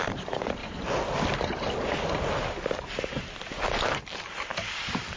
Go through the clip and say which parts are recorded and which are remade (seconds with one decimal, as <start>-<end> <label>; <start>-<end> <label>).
0.0-0.6 remade; 0.6-3.1 recorded; 3.1-5.2 remade